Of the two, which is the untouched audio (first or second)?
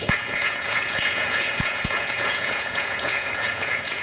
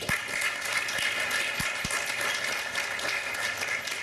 second